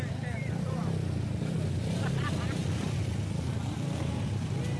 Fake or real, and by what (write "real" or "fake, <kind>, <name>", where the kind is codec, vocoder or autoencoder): real